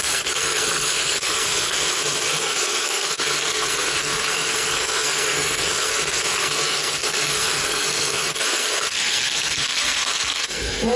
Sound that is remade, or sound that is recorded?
remade